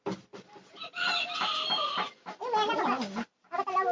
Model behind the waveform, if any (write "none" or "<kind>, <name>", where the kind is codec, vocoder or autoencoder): none